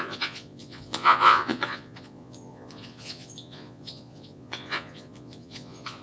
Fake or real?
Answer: fake